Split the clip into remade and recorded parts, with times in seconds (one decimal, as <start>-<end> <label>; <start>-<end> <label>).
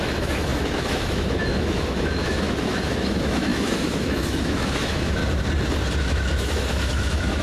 0.0-5.2 remade; 5.2-6.0 recorded; 6.0-7.4 remade